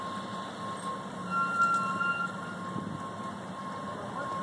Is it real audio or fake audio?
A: real